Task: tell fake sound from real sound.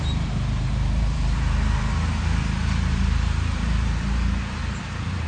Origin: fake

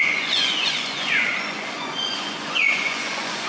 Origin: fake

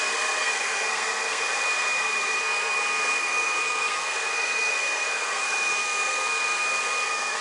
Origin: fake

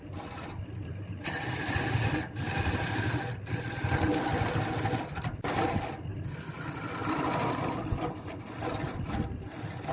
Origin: real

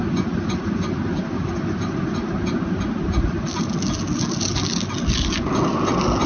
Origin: real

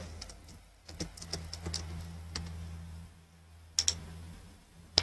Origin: real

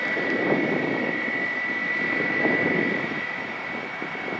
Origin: real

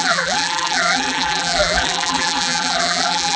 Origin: fake